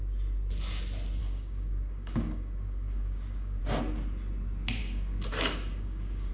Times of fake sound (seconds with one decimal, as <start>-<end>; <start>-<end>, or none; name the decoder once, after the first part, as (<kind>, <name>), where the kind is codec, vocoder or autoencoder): 1.2-3.6 (codec, DAC); 4.8-6.3